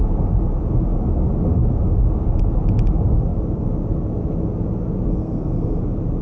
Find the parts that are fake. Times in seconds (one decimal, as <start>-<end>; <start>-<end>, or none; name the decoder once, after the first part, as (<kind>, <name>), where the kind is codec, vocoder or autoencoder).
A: 5.1-5.8 (codec, SNAC)

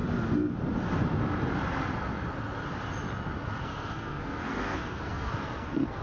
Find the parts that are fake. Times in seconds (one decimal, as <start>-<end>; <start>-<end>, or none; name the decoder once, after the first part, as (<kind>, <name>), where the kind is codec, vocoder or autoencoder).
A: 3.6-6.0 (codec, SNAC)

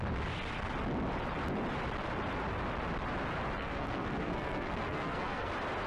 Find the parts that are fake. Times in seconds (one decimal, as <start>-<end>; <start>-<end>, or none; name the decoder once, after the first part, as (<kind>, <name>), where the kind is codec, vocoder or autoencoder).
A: 3.6-5.5 (codec, SNAC)

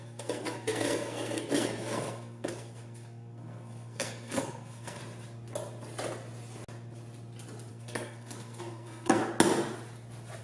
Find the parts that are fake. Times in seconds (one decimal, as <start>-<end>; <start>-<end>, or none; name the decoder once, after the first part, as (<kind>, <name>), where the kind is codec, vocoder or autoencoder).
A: 0.0-5.0 (codec, SNAC); 7.7-9.2

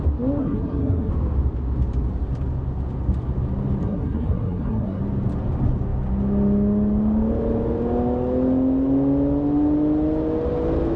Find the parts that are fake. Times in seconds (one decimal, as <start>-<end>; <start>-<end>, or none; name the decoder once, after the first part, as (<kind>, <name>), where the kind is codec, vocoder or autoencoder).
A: 0.4-1.1 (codec, SNAC); 3.8-5.0